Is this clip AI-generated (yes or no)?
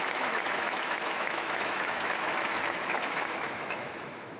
yes